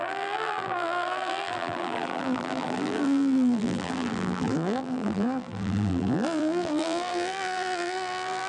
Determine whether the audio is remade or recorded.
remade